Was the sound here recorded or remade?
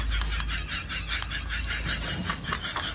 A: recorded